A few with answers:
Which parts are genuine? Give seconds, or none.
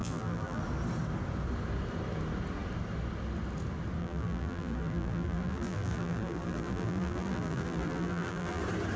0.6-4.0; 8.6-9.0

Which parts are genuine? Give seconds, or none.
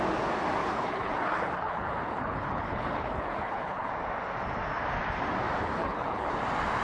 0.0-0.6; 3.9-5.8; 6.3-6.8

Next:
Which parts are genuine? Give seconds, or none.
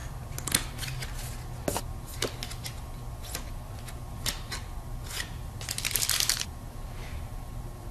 0.0-5.4; 7.5-7.9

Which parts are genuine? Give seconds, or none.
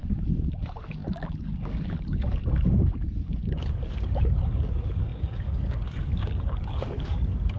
none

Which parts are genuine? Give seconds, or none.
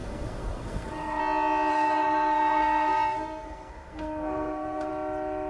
1.2-1.7; 4.9-5.5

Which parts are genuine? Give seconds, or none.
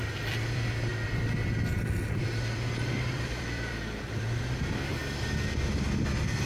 0.9-1.7; 5.0-6.5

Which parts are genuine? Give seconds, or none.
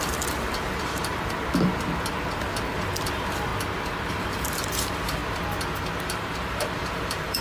1.1-2.7; 3.5-4.1; 5.2-6.0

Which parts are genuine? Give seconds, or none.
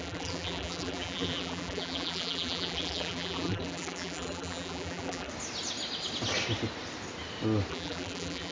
5.3-7.7